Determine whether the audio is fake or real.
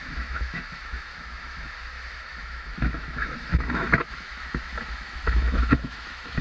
fake